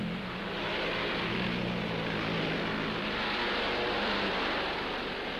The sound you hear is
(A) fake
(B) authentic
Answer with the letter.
A